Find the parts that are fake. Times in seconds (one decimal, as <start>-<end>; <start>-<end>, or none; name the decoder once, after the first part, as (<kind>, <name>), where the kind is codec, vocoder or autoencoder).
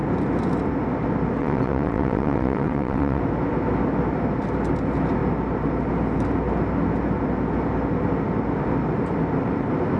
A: 1.4-3.2 (vocoder, WaveNeXt)